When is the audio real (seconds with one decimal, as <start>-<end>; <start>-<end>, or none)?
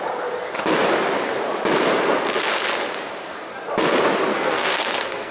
0.0-4.3